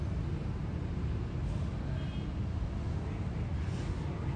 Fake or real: real